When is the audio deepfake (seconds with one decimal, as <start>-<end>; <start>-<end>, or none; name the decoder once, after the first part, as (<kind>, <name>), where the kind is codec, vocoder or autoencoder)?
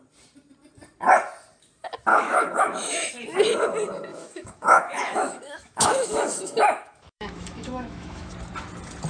2.1-3.1 (autoencoder, DAC-VAE); 4.1-8.3